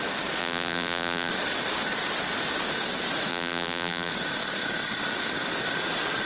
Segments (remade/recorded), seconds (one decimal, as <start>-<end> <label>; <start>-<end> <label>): 0.0-0.4 recorded; 0.4-1.3 remade; 1.3-3.3 recorded; 3.3-4.1 remade; 4.1-6.3 recorded